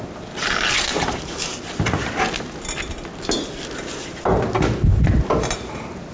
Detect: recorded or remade recorded